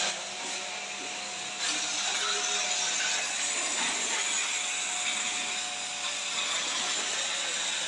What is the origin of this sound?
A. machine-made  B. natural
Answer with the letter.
B